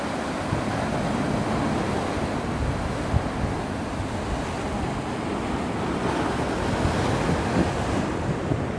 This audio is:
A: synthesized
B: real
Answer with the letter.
B